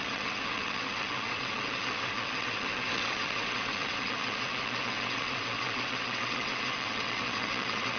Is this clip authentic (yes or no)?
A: no